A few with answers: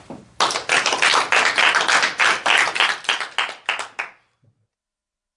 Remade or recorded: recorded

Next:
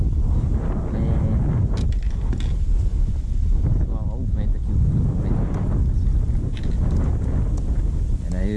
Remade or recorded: recorded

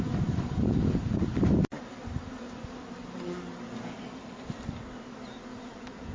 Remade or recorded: recorded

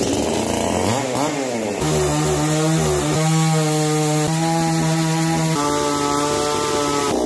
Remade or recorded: recorded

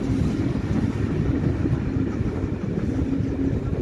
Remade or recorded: recorded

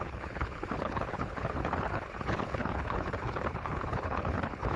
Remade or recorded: remade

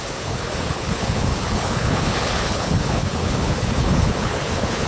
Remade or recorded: remade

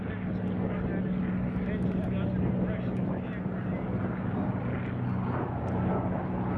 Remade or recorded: recorded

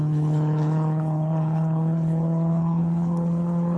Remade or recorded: remade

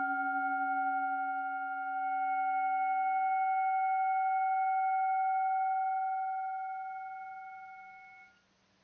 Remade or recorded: recorded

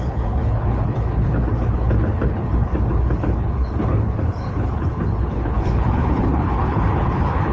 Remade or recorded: remade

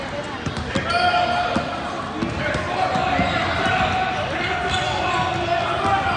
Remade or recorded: recorded